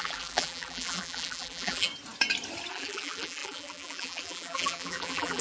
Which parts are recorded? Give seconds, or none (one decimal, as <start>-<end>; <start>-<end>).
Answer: 1.9-2.7